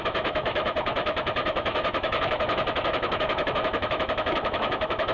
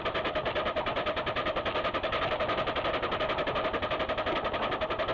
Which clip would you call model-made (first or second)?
first